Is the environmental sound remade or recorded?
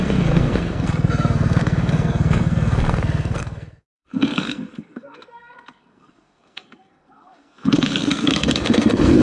remade